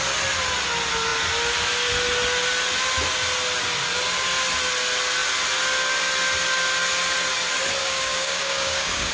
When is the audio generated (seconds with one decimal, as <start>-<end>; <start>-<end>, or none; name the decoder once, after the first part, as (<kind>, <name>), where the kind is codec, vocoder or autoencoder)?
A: 7.8-9.1 (codec, DAC)